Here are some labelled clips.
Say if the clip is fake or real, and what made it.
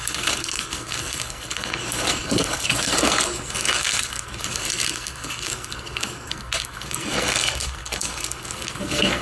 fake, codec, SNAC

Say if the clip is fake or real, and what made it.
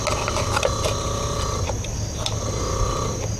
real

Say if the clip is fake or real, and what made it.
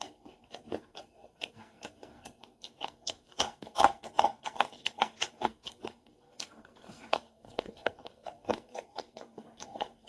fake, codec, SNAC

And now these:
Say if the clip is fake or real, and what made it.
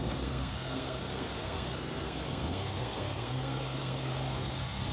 fake, codec, SNAC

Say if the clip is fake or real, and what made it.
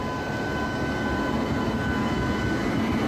real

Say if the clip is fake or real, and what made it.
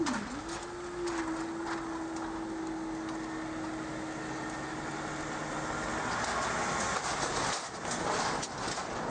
real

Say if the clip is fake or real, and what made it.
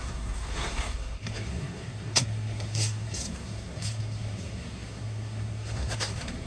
fake, codec, SNAC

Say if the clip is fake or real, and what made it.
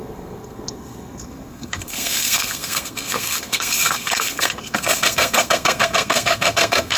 fake, codec, SNAC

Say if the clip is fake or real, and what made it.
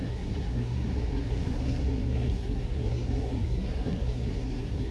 fake, codec, SNAC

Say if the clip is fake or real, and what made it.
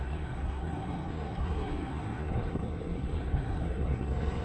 fake, codec, SNAC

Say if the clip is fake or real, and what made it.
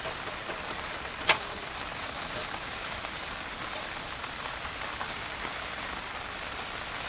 real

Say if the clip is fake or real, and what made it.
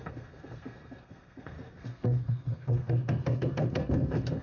fake, codec, SNAC